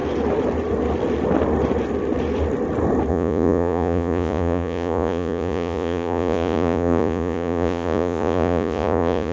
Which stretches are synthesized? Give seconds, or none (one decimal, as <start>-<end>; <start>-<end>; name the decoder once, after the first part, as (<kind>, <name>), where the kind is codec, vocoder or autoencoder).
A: 3.1-9.3 (vocoder, Vocos)